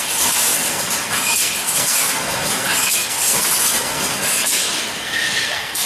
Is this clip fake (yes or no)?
yes